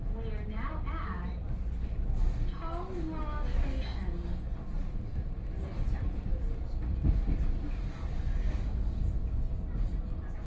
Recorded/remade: recorded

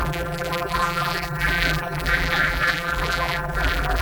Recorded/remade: remade